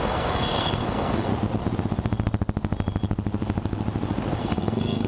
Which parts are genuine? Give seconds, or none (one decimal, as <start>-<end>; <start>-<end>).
1.3-4.4